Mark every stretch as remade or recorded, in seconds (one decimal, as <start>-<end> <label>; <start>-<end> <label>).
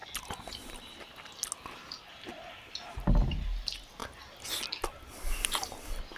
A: 0.0-6.2 recorded